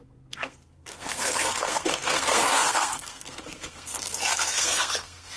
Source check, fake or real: fake